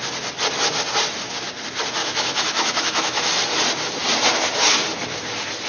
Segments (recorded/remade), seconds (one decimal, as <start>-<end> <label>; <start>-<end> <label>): 0.0-2.0 recorded; 2.0-3.3 remade; 3.3-5.7 recorded